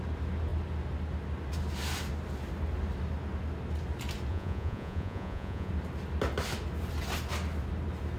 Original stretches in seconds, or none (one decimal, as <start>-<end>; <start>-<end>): 0.0-4.3; 5.7-8.2